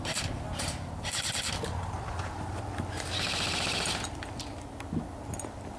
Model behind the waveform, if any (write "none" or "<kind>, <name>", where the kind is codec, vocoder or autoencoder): none